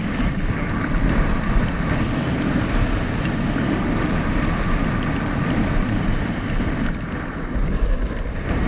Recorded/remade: recorded